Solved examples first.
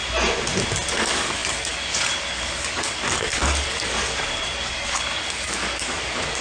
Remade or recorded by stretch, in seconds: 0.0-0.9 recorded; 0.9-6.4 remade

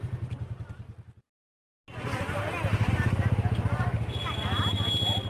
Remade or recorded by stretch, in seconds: 0.0-5.3 recorded

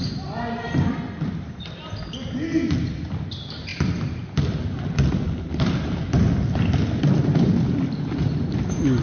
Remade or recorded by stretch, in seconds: 0.0-9.0 recorded

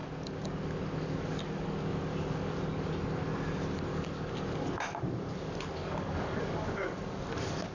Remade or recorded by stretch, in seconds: 0.0-2.9 remade; 2.9-3.9 recorded; 3.9-7.7 remade

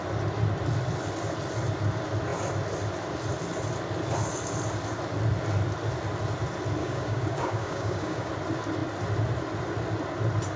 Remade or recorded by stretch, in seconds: 0.0-6.8 recorded; 6.8-8.3 remade; 8.3-10.6 recorded

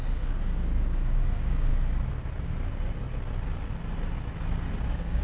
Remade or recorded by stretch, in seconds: 0.0-1.7 remade; 1.7-4.8 recorded; 4.8-5.2 remade